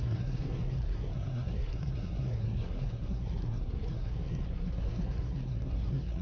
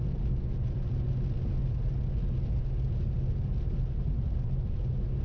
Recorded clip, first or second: second